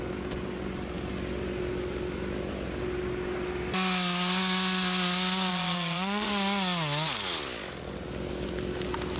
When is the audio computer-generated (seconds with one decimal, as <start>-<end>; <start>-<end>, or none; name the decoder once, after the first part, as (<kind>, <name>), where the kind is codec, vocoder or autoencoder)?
5.5-6.3 (vocoder, Vocos)